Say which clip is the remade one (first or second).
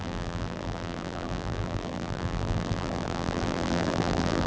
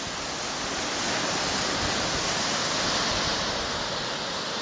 first